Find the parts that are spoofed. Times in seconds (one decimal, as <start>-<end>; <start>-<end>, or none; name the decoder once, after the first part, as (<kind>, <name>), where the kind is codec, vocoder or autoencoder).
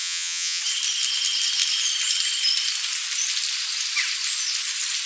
0.0-0.6 (vocoder, Vocos)